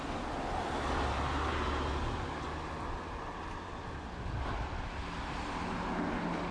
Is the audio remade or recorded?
recorded